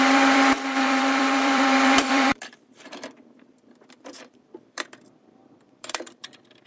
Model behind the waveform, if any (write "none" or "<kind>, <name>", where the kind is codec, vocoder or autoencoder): vocoder, BigVGAN v2